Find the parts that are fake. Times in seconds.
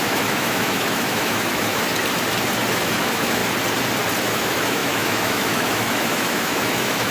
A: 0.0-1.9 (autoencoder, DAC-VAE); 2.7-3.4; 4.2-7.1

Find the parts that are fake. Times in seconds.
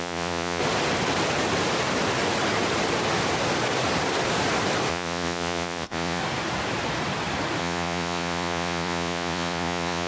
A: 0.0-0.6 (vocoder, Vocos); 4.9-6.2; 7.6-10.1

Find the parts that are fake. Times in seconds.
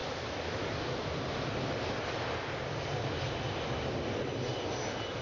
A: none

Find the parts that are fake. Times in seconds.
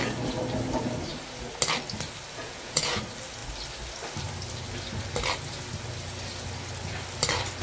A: 2.4-3.0 (vocoder, Vocos)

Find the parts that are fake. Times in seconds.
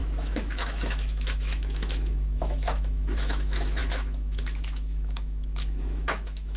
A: 0.0-6.6 (autoencoder, DAC-VAE)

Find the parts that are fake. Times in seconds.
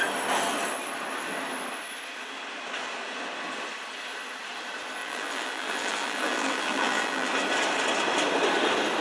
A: 5.0-7.3 (vocoder, BigVGAN v2)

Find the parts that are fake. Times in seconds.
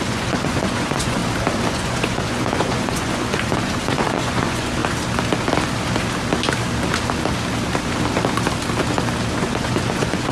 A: 0.0-1.2 (vocoder, Vocos); 1.7-4.8; 9.3-10.3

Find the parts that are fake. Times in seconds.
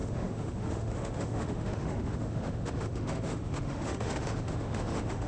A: 0.0-5.3 (autoencoder, DAC-VAE)